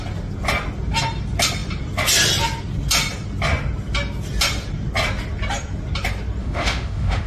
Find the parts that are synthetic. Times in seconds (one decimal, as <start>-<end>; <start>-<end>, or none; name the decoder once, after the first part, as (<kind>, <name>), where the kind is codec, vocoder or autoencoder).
6.4-7.3 (autoencoder, DAC-VAE)